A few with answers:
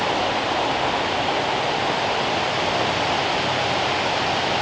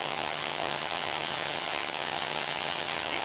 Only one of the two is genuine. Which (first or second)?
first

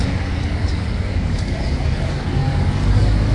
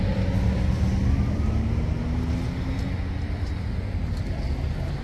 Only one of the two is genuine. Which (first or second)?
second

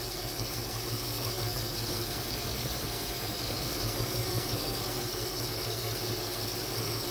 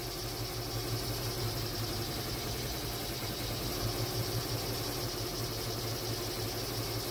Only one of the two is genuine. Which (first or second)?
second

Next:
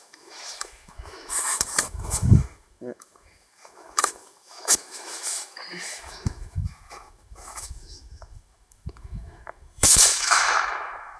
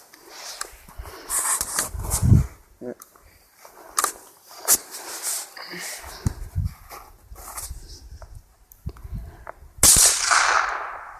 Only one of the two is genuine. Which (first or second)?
second